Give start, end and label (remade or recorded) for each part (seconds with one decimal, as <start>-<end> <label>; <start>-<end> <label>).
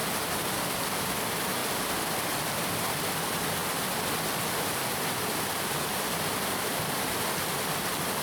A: 0.0-3.6 remade; 3.6-4.6 recorded; 4.6-8.2 remade